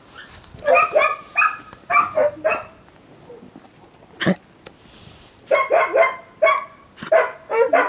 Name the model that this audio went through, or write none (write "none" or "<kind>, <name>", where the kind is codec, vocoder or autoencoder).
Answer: none